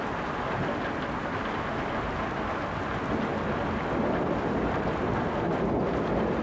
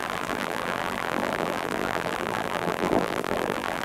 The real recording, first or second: first